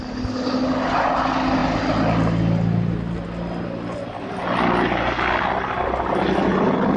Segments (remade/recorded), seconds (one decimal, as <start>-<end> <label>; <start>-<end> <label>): 0.0-7.0 recorded